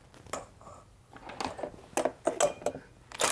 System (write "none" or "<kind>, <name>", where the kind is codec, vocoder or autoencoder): none